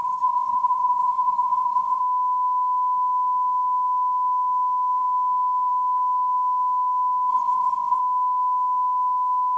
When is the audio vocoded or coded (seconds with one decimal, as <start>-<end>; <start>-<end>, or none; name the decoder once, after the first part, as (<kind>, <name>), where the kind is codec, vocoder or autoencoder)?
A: 0.0-2.0 (codec, HILCodec); 7.3-8.0